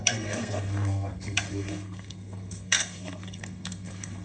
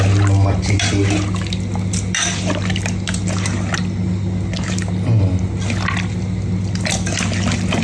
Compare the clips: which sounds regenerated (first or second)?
first